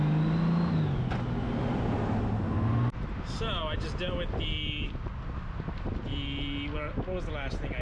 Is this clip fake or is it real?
real